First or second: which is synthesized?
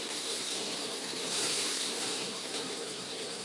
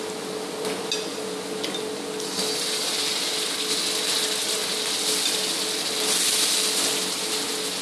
first